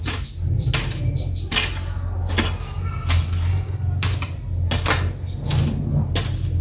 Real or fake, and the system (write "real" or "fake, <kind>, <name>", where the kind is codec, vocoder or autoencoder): real